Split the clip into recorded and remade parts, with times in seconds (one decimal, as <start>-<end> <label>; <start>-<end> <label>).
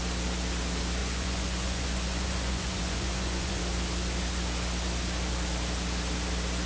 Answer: 0.0-1.0 recorded; 1.0-3.6 remade; 3.6-6.7 recorded